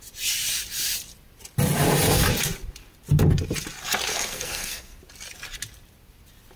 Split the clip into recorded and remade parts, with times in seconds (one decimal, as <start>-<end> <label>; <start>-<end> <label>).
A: 0.0-4.1 recorded; 4.1-5.0 remade; 5.0-6.6 recorded